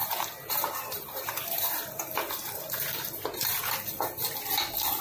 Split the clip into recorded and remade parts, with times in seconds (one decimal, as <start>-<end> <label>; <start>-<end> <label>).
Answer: 0.0-1.4 remade; 1.4-5.0 recorded